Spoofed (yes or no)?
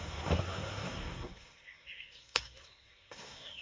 yes